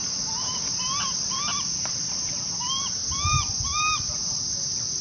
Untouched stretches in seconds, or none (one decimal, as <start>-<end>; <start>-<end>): none